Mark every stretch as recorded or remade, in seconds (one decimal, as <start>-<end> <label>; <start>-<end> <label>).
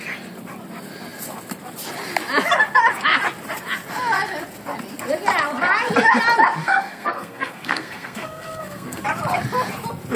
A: 0.0-6.6 recorded; 6.6-9.0 remade; 9.0-10.2 recorded